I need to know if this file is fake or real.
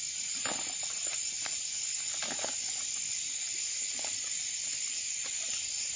real